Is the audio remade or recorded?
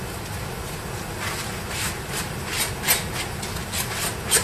recorded